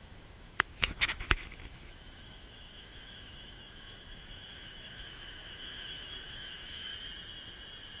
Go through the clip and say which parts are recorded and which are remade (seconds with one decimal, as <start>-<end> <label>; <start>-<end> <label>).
0.0-6.9 remade; 6.9-8.0 recorded